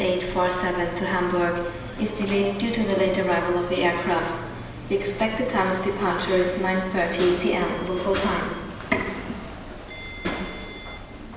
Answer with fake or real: real